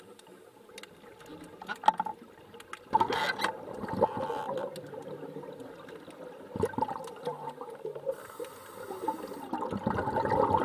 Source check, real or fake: real